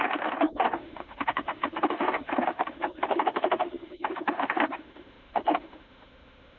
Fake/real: fake